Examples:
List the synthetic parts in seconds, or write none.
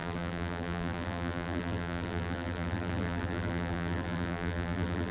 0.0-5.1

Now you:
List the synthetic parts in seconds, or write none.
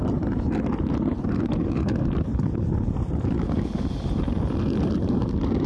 0.0-2.3; 5.3-5.7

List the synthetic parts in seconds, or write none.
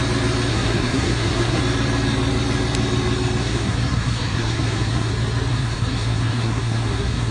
0.5-1.6; 3.4-5.1; 5.5-7.3